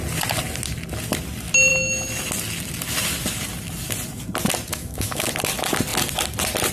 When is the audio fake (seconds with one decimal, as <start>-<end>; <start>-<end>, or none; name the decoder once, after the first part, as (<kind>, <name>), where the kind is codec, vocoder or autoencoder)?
4.7-5.3 (autoencoder, DAC-VAE)